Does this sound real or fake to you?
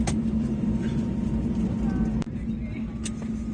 real